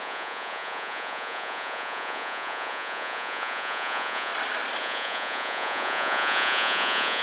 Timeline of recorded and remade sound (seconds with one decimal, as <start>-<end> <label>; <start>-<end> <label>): 0.0-4.3 remade; 4.3-4.8 recorded; 4.8-7.2 remade